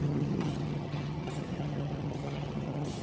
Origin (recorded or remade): remade